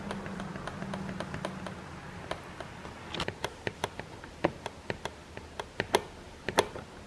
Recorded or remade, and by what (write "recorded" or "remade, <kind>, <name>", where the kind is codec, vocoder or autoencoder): recorded